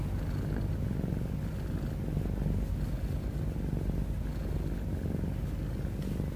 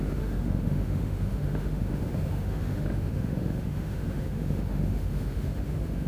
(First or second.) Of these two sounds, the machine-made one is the second